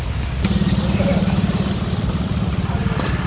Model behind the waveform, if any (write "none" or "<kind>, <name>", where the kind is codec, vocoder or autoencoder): vocoder, BigVGAN v2